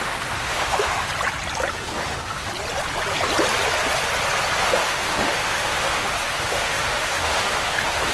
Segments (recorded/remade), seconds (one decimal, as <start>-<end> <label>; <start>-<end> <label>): 0.0-1.1 remade; 1.1-1.7 recorded; 1.7-2.5 remade; 2.5-4.6 recorded; 4.6-8.1 remade